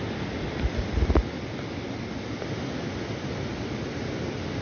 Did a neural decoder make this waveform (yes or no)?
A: no